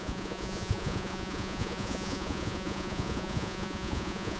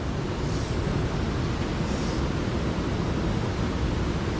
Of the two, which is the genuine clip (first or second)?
second